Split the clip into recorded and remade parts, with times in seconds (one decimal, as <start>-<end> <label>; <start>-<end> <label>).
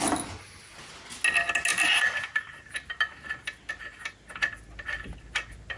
0.0-5.8 recorded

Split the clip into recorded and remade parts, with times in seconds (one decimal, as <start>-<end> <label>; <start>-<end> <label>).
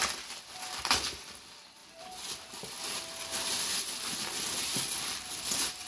0.0-5.9 recorded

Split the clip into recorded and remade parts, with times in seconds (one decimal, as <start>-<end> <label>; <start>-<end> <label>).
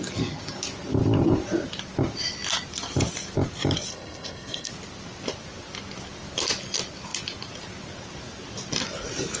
0.0-3.9 recorded; 3.9-4.7 remade; 4.7-9.4 recorded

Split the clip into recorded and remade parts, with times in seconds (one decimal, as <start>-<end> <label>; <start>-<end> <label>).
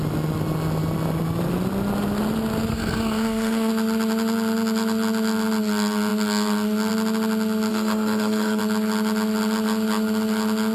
0.0-2.7 recorded; 2.7-3.7 remade; 3.7-7.7 recorded; 7.7-8.6 remade; 8.6-10.7 recorded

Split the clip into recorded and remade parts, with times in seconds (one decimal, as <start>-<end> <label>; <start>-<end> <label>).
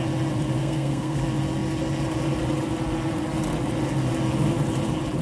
0.0-0.6 recorded; 0.6-1.2 remade; 1.2-5.2 recorded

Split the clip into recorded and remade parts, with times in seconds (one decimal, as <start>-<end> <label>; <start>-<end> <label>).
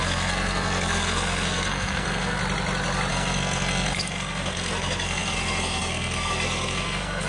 0.0-2.4 remade; 2.4-3.1 recorded; 3.1-7.3 remade